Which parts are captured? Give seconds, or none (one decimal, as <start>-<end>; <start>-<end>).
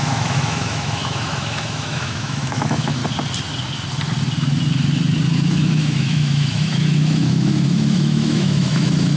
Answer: 3.0-5.5